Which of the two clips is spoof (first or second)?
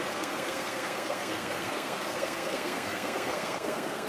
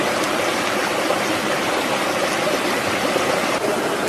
first